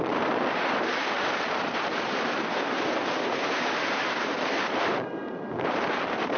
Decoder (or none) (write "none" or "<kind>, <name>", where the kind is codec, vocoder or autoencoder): vocoder, BigVGAN v2